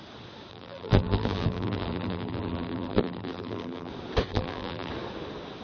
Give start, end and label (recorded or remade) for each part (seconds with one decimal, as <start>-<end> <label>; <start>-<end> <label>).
0.0-0.5 recorded; 0.5-3.9 remade; 3.9-4.3 recorded; 4.3-4.9 remade; 4.9-5.6 recorded